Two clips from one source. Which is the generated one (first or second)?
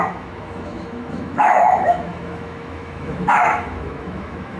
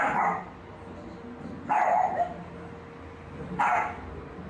first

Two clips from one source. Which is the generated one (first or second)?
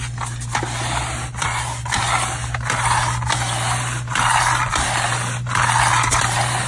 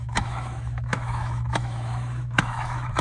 second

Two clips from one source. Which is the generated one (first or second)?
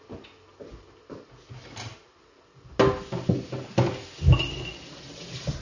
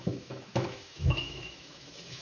second